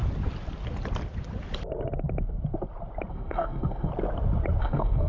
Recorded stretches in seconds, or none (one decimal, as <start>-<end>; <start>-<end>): 0.0-3.1; 3.9-4.6